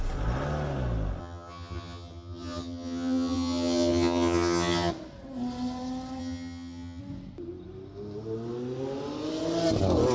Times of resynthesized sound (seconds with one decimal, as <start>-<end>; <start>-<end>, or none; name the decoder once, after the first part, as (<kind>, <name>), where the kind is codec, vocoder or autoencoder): 1.2-4.9 (vocoder, HiFi-GAN); 6.2-7.0

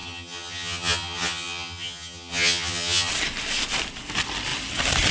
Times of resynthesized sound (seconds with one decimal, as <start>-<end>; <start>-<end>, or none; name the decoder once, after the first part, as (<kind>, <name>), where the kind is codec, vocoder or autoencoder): 0.0-3.1 (vocoder, HiFi-GAN)

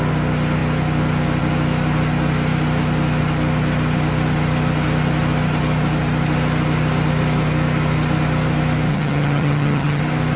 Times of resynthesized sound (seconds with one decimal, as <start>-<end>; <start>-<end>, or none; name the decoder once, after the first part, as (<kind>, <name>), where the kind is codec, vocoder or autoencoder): 8.9-10.0 (vocoder, HiFi-GAN)

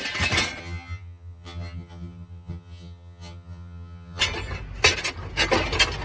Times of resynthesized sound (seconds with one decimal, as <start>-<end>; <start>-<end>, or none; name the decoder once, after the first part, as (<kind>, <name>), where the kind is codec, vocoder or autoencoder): 0.6-4.2 (vocoder, HiFi-GAN)

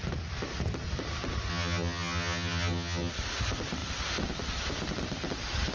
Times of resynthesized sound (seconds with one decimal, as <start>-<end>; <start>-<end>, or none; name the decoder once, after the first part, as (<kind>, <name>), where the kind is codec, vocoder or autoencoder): 1.5-3.1 (vocoder, HiFi-GAN)

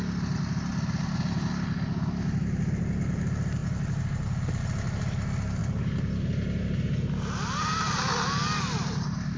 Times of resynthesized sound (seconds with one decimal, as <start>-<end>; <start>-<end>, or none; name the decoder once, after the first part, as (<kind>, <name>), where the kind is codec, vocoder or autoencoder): none

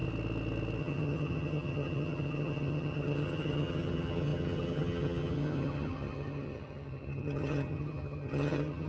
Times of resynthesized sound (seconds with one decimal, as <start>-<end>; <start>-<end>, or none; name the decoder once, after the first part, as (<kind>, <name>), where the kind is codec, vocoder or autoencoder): 0.8-8.9 (vocoder, HiFi-GAN)